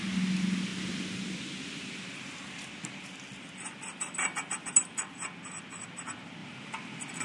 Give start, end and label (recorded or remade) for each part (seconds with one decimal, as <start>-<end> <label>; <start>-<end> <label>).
0.0-7.2 recorded

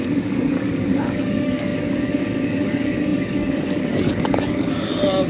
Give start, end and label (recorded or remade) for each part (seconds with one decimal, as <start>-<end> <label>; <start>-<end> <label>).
0.0-5.3 remade

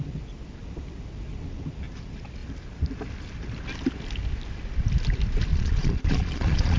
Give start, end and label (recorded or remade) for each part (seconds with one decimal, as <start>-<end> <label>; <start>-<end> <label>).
0.0-5.5 recorded; 5.5-6.8 remade

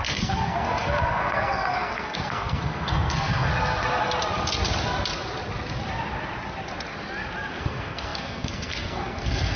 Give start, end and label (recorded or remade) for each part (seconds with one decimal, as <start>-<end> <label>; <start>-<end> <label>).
0.0-3.5 remade; 3.5-7.5 recorded; 7.5-9.6 remade

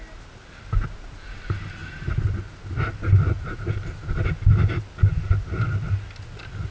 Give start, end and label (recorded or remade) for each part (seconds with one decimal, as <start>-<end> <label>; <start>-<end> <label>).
0.0-6.7 recorded

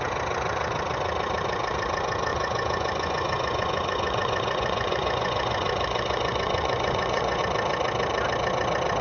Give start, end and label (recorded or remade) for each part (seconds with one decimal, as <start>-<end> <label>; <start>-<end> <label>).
0.0-2.3 recorded; 2.3-7.4 remade; 7.4-9.0 recorded

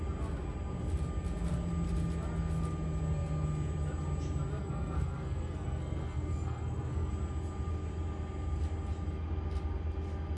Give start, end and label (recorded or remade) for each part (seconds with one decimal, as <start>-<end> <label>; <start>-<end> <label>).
0.0-4.6 recorded; 4.6-7.1 remade; 7.1-10.4 recorded

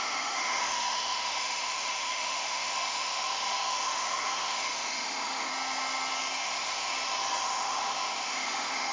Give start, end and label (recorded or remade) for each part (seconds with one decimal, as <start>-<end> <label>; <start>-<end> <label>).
0.0-5.5 remade; 5.5-6.4 recorded; 6.4-6.9 remade; 6.9-7.4 recorded; 7.4-8.9 remade